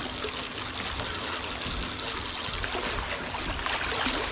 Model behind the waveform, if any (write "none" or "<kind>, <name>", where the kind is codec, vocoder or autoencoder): none